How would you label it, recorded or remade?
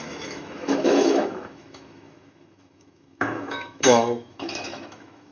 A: remade